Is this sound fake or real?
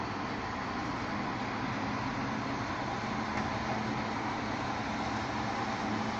real